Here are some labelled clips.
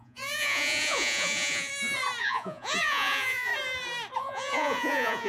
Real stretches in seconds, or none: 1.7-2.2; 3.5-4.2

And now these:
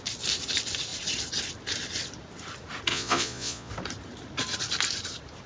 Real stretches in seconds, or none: 0.0-2.9; 3.7-5.5